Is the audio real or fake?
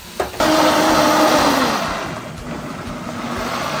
real